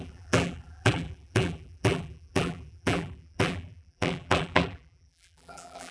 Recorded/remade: remade